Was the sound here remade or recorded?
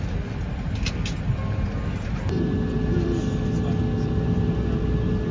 recorded